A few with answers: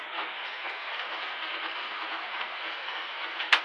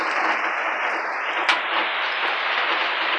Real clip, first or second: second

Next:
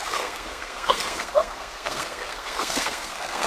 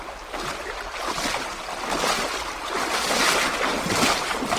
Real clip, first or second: second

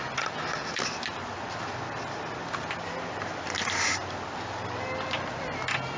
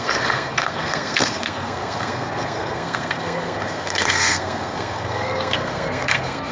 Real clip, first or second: first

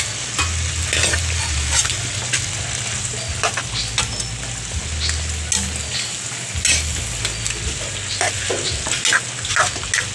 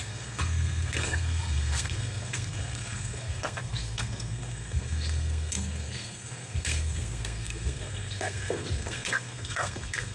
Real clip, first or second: first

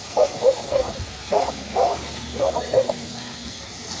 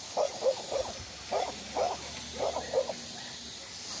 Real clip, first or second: second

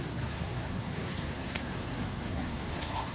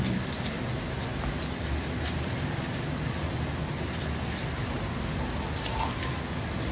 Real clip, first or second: second